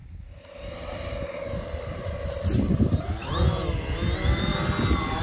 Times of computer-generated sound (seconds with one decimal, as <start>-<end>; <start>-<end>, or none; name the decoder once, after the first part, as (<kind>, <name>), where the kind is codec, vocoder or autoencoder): 0.0-3.0 (vocoder, BigVGAN v2)